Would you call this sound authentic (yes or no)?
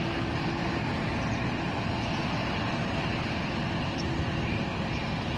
yes